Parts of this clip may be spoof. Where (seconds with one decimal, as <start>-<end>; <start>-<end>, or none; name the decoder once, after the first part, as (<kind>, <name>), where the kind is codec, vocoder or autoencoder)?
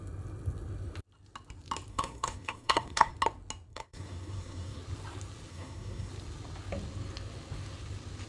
1.9-3.1 (codec, SNAC); 3.7-4.8; 5.5-6.1